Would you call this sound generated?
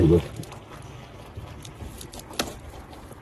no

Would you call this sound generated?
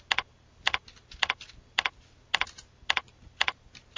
no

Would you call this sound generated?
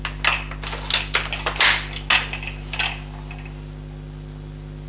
no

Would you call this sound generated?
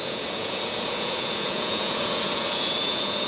yes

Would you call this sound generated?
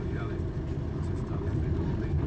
no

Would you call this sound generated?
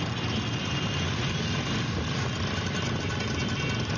no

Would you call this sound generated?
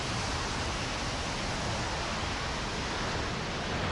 no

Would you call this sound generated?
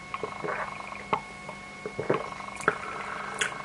no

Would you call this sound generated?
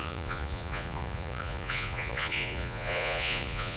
yes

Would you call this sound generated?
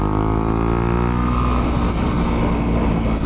no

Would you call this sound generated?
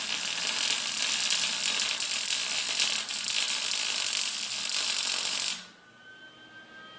no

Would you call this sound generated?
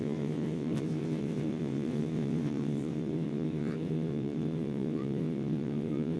yes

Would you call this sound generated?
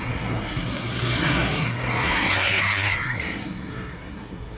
yes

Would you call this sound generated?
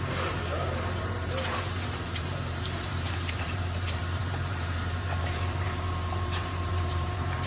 yes